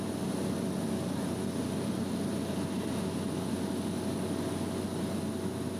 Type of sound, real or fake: real